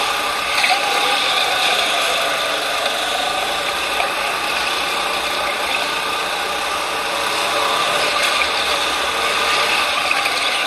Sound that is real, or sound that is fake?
real